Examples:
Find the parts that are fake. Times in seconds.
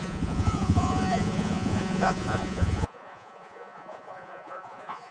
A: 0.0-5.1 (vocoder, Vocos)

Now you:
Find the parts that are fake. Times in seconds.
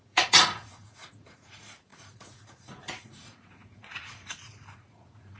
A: 0.0-5.4 (vocoder, Vocos)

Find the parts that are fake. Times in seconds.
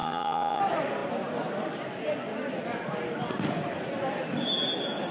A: 0.0-0.6 (vocoder, HiFi-GAN)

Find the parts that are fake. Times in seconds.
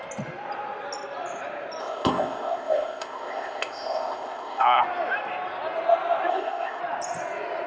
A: 1.8-4.8 (codec, ZipCodec); 6.3-6.8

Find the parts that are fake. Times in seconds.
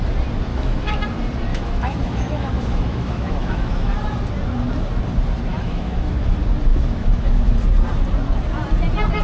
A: 0.5-1.0 (autoencoder, DAC-VAE); 1.5-3.9; 5.5-6.1; 6.7-7.5